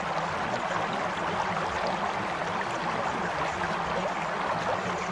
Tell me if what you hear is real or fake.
real